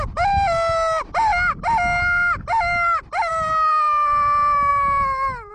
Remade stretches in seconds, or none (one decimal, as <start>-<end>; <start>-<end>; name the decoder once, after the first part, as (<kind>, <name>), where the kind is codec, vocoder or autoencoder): none